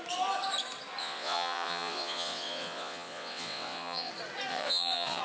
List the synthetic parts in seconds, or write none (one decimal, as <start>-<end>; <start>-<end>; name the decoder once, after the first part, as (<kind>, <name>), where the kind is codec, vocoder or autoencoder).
1.0-4.1 (vocoder, WaveNeXt); 4.5-5.2